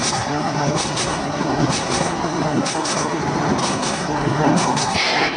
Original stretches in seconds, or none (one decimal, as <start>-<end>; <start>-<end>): 3.2-3.6